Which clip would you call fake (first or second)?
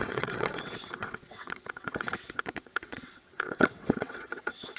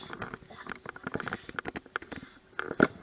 first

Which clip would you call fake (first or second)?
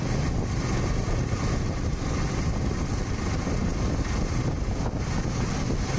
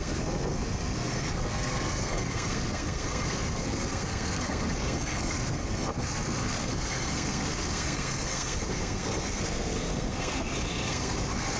second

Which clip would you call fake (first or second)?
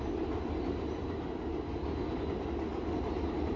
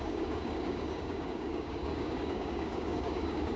second